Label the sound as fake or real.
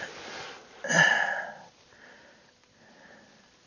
real